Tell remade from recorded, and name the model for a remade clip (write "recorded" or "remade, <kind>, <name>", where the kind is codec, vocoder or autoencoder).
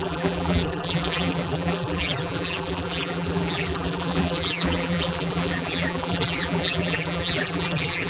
remade, vocoder, BigVGAN v2